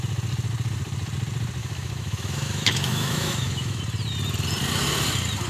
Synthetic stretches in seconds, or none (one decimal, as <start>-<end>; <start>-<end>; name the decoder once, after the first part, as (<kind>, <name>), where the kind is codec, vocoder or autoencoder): 1.6-3.8 (autoencoder, DAC-VAE)